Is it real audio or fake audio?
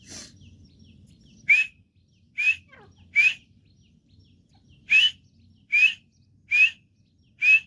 real